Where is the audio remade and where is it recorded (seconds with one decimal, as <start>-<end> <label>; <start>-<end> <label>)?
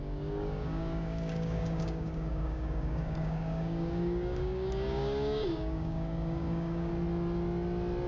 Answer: 0.0-6.9 remade; 6.9-8.1 recorded